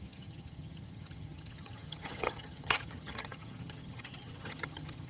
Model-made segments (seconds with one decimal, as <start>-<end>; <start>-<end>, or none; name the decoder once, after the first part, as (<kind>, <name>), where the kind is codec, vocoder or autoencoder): 0.0-5.1 (vocoder, HiFi-GAN)